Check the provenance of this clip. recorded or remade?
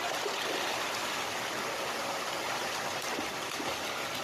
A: recorded